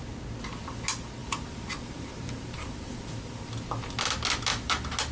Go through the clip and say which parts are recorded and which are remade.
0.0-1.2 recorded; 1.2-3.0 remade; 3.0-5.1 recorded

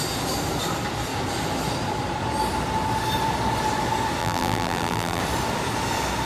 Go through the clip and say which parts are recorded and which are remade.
0.0-4.2 recorded; 4.2-5.2 remade; 5.2-6.3 recorded